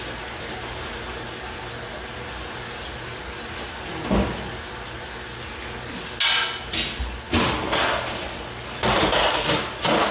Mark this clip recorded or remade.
recorded